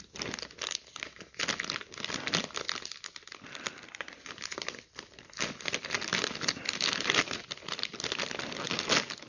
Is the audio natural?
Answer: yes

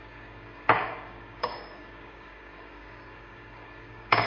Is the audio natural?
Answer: no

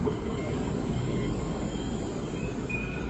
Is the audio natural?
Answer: no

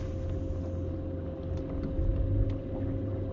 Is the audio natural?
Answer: yes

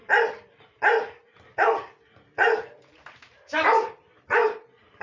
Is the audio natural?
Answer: yes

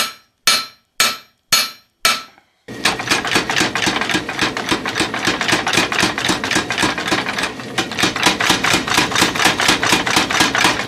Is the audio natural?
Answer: yes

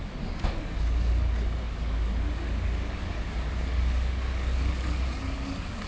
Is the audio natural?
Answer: no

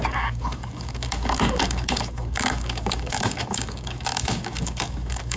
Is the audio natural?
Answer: no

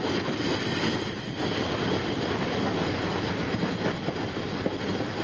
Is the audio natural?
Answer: yes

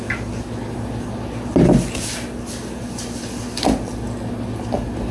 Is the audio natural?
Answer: yes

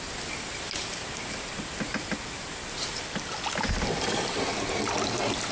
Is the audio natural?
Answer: yes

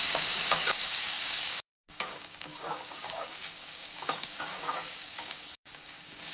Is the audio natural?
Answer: no